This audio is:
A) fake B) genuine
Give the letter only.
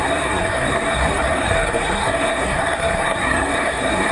A